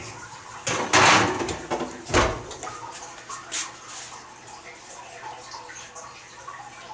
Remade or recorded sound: recorded